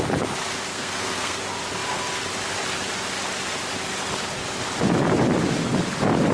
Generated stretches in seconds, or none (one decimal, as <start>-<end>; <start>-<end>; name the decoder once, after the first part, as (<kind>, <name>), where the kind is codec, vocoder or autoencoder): 0.7-1.4 (codec, SNAC)